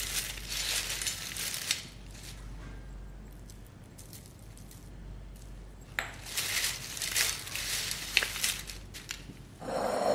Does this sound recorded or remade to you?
recorded